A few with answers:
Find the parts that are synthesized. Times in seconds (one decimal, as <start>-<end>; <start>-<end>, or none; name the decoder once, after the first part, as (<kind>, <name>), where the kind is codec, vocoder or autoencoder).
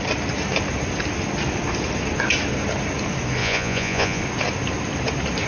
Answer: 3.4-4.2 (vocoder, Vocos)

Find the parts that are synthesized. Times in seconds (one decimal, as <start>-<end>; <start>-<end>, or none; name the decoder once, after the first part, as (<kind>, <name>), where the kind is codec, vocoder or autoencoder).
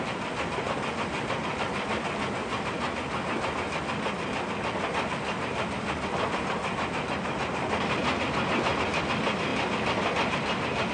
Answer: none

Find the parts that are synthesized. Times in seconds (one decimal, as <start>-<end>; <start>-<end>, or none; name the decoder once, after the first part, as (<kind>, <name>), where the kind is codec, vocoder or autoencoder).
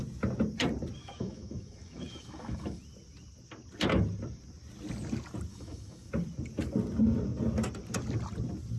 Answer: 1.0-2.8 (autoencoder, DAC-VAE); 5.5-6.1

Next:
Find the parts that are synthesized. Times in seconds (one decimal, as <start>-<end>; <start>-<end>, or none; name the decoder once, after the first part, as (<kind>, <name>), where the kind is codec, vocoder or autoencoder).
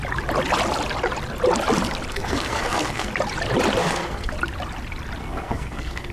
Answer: 2.1-3.1 (codec, SNAC); 3.8-4.3; 5.2-6.1